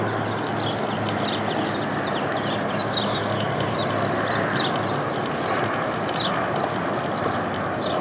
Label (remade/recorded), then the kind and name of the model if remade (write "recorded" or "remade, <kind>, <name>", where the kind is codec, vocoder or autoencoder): recorded